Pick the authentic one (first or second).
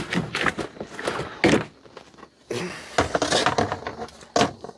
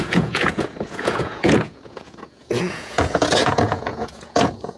first